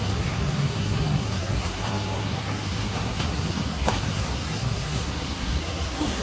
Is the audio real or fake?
fake